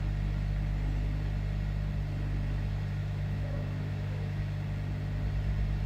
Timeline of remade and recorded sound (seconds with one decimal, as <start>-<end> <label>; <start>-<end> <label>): 0.0-3.0 recorded; 3.0-4.4 remade; 4.4-5.9 recorded